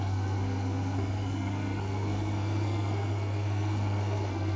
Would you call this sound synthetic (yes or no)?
yes